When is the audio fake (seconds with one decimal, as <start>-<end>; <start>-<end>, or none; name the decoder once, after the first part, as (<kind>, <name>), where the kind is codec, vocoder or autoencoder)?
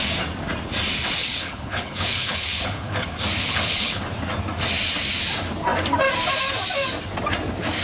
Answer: 1.2-2.9 (codec, HILCodec); 3.4-4.0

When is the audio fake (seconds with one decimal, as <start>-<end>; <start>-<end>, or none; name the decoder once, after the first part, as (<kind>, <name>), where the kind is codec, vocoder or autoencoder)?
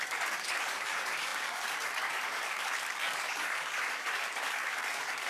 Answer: 0.0-5.3 (codec, DAC)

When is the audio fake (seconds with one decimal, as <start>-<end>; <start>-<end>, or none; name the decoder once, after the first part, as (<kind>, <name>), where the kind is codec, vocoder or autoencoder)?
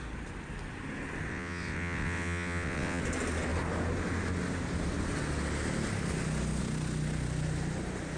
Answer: 1.3-3.0 (vocoder, WaveNeXt)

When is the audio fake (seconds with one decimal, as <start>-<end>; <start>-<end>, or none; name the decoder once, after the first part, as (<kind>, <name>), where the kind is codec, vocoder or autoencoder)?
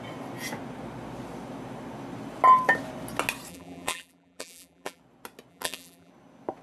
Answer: 3.5-5.0 (vocoder, BigVGAN v2); 5.5-6.1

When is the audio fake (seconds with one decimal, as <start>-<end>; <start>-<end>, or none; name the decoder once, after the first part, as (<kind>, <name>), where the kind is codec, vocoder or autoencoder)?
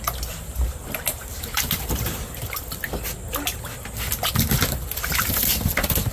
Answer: none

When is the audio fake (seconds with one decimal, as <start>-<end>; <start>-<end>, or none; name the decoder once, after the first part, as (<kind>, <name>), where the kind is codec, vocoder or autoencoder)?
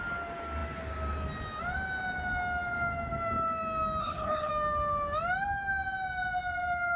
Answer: 4.0-4.5 (codec, HILCodec)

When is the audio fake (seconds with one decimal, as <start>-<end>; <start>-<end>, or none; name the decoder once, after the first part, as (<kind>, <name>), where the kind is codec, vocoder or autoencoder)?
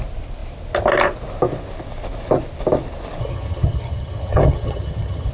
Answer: 3.2-5.3 (vocoder, HiFi-GAN)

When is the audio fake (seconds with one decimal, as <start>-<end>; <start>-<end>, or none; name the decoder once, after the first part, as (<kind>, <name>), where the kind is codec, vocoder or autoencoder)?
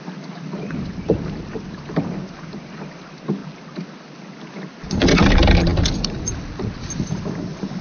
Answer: none